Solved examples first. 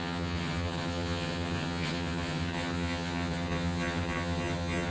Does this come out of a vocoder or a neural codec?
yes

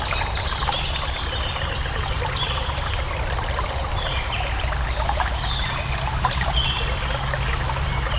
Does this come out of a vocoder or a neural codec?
no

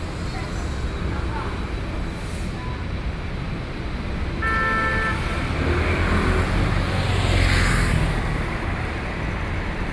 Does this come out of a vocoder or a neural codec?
no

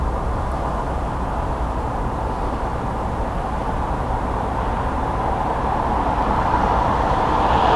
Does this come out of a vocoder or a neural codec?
yes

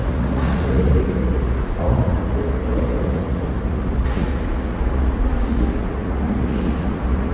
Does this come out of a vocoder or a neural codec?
yes